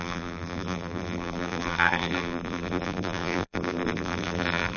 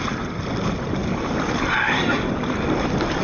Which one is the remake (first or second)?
first